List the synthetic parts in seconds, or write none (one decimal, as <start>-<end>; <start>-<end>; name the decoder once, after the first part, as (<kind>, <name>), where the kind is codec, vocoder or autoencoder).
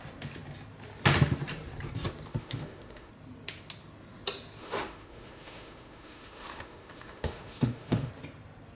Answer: 2.3-3.1 (autoencoder, DAC-VAE); 4.6-8.1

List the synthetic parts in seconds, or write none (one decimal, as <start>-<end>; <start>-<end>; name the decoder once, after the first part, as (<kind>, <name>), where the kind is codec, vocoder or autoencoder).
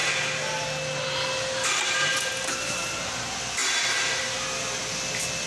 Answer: none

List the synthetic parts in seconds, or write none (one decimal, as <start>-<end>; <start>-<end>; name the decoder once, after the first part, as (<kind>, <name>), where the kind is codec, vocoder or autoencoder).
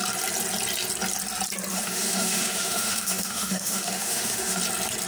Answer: 1.7-4.6 (autoencoder, DAC-VAE)